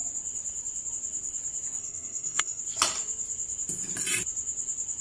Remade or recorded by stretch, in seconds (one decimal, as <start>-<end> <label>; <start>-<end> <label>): 0.0-1.8 recorded; 1.8-2.6 remade; 2.6-5.0 recorded